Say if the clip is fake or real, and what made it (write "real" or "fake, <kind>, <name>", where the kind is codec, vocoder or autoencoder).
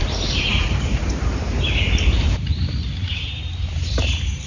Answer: fake, vocoder, BigVGAN v2